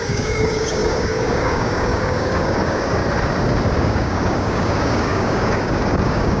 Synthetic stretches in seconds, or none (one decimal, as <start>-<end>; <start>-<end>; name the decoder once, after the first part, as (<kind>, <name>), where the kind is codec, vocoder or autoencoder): 0.0-3.0 (codec, DAC); 3.8-6.4